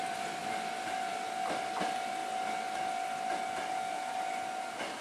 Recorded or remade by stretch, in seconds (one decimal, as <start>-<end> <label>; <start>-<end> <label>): 0.0-5.0 recorded